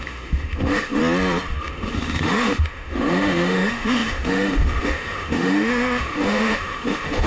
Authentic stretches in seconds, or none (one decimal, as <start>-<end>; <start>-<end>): 1.0-1.6